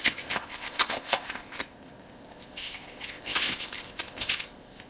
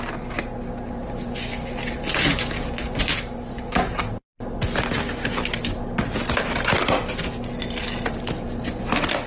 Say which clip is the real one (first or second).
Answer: second